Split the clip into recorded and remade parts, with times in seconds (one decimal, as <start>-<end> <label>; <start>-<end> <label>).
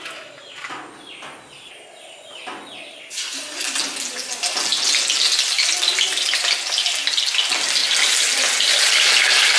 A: 0.0-9.6 recorded